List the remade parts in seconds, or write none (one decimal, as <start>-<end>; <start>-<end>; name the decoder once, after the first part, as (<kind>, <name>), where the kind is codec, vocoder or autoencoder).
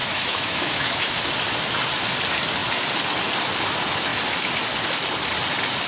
0.0-1.3 (autoencoder, DAC-VAE)